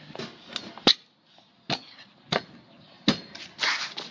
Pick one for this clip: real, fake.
real